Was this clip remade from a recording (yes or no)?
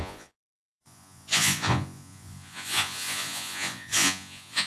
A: yes